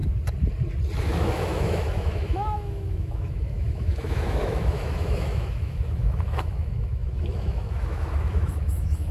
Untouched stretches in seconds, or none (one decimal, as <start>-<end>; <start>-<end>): 0.0-1.0